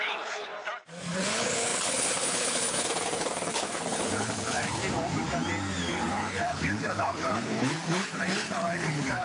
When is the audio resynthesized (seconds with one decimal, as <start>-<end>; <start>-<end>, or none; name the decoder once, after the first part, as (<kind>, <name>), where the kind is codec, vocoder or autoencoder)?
0.0-0.5 (codec, HILCodec); 1.1-4.8; 5.9-9.2